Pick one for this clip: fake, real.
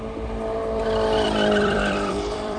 fake